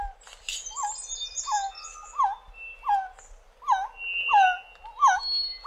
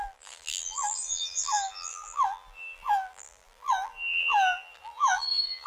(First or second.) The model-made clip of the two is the second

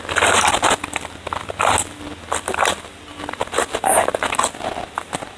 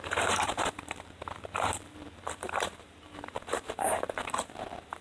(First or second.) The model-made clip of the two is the second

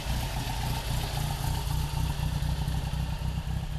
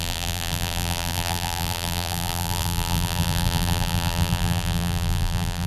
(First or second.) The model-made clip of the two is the second